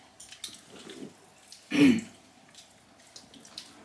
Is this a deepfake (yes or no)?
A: no